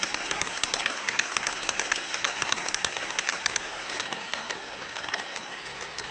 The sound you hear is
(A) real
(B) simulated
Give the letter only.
B